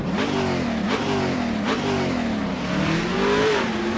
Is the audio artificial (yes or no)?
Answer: no